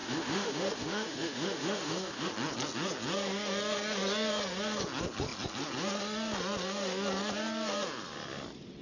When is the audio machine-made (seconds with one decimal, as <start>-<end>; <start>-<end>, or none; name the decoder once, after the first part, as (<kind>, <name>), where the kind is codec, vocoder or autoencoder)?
0.0-2.3 (autoencoder, DAC-VAE)